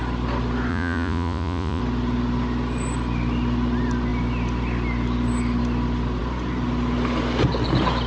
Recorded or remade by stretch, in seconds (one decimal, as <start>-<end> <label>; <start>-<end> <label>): 0.0-0.7 recorded; 0.7-1.8 remade; 1.8-8.1 recorded